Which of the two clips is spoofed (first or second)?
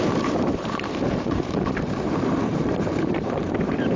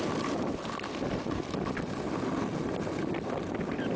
first